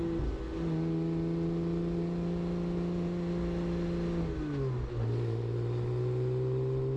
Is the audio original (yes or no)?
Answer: yes